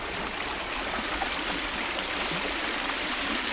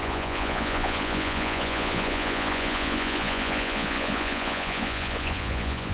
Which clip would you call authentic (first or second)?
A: first